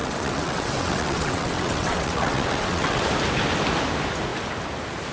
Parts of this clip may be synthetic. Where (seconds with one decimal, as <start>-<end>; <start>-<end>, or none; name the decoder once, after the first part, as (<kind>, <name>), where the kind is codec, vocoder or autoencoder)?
0.0-3.0 (vocoder, WaveNeXt)